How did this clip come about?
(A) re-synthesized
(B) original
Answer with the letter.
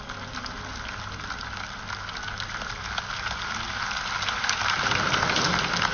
B